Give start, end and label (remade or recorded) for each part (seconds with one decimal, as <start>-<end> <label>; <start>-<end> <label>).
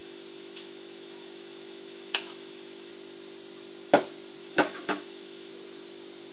0.0-2.9 remade; 2.9-4.4 recorded; 4.4-5.5 remade; 5.5-6.3 recorded